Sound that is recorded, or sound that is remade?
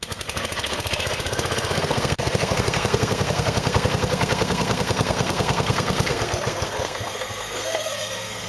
remade